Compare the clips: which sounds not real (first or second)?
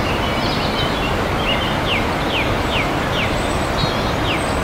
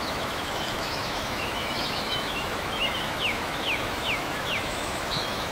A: second